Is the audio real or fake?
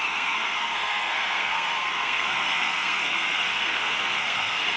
fake